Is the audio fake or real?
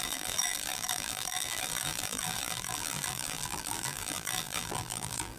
fake